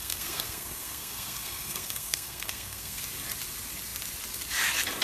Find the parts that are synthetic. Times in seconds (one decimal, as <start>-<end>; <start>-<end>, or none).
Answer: 0.0-3.0